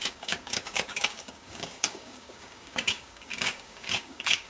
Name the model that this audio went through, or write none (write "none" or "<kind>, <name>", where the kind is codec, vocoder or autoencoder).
codec, DAC